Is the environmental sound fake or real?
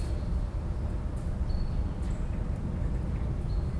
real